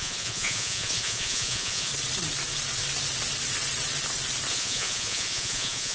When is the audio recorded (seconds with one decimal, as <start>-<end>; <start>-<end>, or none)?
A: 1.9-4.5

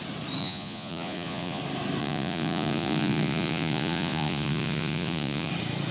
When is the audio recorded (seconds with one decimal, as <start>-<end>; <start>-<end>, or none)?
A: 0.0-0.4; 1.6-2.0; 5.5-5.9